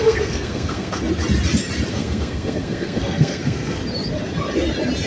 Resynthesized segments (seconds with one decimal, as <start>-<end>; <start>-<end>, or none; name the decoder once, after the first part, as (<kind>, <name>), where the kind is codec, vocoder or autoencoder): 0.0-1.0 (codec, SNAC); 1.9-3.8